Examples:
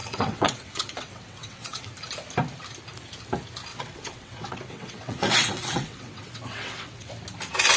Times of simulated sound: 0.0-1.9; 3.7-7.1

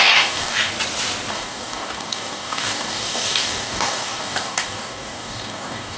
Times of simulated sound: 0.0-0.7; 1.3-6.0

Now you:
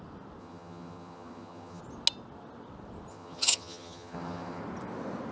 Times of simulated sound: 0.4-1.8; 3.1-4.6

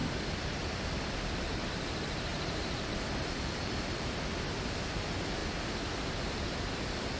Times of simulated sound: 2.3-4.2

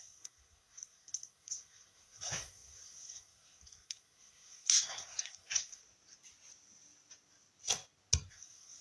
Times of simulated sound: 0.0-5.8; 8.3-8.8